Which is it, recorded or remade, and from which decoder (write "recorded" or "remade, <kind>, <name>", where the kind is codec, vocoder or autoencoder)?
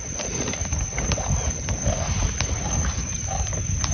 recorded